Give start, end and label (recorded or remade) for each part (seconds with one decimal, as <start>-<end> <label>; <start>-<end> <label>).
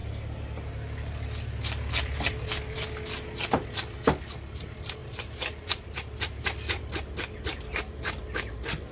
0.0-5.0 recorded; 5.0-5.9 remade; 5.9-8.9 recorded